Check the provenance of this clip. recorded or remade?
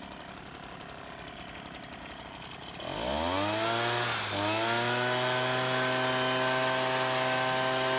recorded